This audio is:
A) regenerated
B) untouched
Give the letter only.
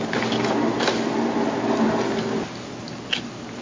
B